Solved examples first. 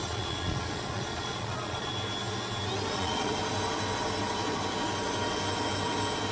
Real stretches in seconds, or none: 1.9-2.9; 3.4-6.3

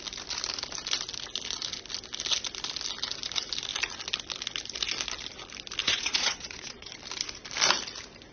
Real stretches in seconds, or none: 0.0-5.8; 6.9-8.3

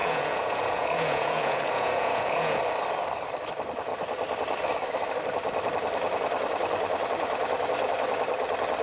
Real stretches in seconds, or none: 2.6-8.8

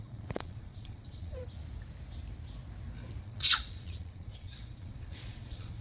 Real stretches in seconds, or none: 1.4-3.2

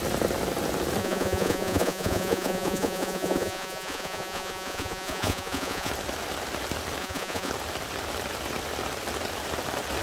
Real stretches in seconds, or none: 0.0-1.0; 5.9-7.0; 7.5-10.0

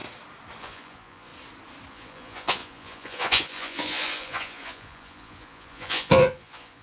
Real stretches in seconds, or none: 0.0-0.6; 1.3-1.9

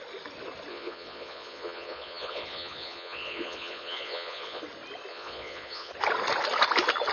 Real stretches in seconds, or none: 0.0-0.7; 4.6-5.1; 5.9-7.1

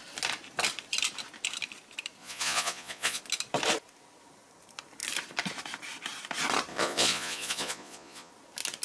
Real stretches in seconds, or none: 0.0-2.2; 3.2-6.7; 8.3-8.8